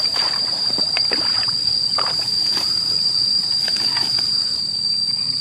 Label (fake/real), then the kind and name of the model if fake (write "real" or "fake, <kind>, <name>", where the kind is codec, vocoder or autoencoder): fake, vocoder, BigVGAN v2